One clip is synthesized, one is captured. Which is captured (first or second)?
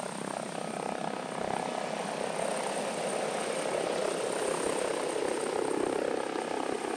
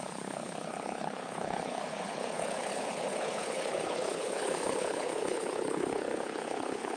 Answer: first